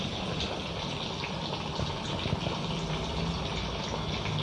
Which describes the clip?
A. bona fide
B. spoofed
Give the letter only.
A